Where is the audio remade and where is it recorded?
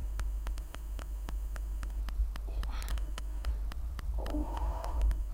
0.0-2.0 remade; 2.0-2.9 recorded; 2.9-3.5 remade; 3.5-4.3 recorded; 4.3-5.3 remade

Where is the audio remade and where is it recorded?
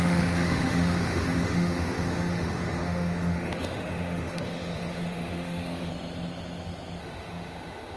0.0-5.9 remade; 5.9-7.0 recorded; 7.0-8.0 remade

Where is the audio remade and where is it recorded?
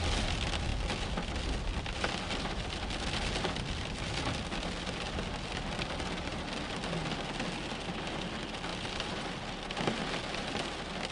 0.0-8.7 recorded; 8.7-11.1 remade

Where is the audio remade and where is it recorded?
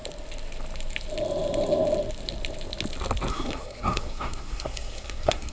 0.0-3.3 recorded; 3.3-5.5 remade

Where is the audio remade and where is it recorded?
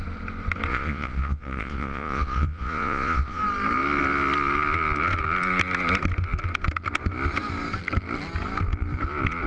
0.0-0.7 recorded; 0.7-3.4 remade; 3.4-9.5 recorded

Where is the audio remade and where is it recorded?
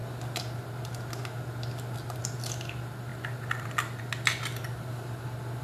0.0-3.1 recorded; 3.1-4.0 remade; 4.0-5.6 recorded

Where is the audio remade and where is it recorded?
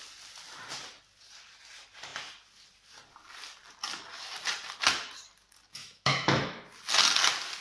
0.0-5.8 recorded; 5.8-6.7 remade; 6.7-7.6 recorded